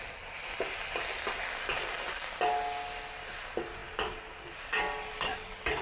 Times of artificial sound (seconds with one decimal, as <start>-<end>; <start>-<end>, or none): none

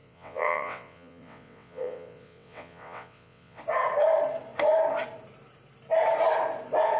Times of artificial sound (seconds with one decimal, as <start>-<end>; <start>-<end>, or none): 0.0-3.6

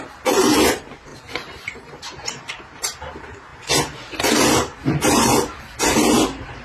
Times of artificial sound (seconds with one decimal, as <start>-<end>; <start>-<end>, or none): 1.1-2.5

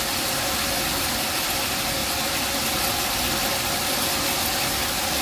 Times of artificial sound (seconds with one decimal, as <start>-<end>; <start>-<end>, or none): none

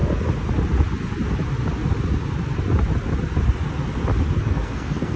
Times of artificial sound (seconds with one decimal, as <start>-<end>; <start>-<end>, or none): 4.4-5.2

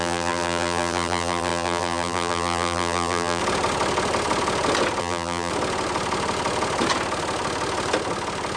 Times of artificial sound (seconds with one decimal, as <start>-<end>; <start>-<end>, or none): 0.0-3.4; 5.0-5.5

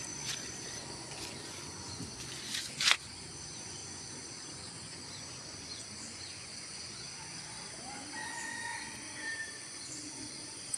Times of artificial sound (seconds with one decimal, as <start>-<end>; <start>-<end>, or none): 0.0-10.8

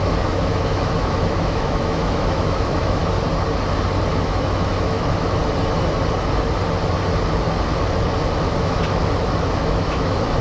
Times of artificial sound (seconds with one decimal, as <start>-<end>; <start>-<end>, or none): 0.0-3.0; 4.1-5.4; 8.6-9.0; 9.6-10.4